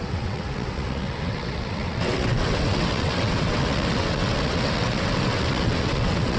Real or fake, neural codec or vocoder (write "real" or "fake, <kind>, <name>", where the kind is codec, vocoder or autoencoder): fake, vocoder, WaveNeXt